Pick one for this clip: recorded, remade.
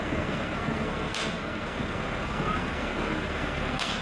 remade